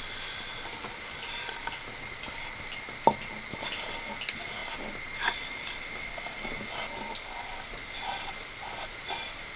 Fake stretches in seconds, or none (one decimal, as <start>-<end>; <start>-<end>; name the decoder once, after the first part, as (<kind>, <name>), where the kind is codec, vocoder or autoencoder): none